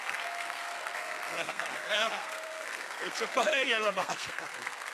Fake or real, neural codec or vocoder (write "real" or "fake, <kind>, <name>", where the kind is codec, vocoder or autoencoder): fake, codec, SNAC